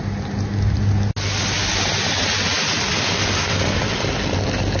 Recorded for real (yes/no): yes